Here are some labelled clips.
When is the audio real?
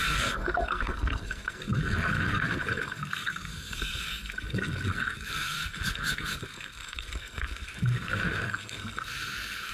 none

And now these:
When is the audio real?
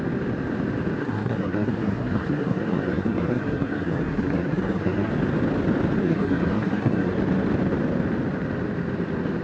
0.0-1.0; 5.1-6.0; 7.1-9.4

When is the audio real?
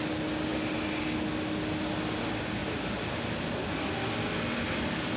0.0-5.2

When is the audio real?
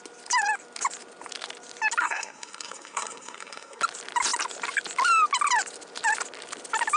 0.0-2.0; 3.8-7.0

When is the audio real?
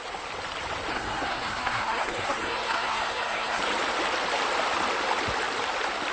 0.0-0.9; 3.6-6.1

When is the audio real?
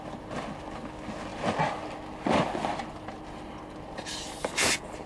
0.0-5.1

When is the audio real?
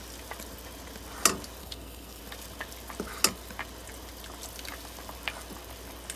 0.0-1.6; 2.2-6.2